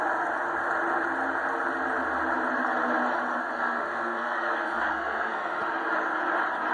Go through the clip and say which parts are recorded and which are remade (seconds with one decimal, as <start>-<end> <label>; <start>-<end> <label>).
0.0-3.3 recorded; 3.3-5.6 remade; 5.6-6.7 recorded